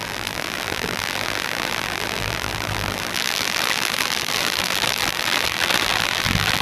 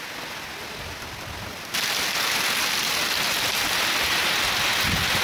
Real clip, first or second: second